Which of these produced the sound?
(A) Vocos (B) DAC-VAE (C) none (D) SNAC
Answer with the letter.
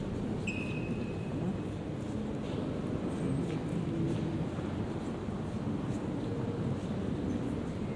C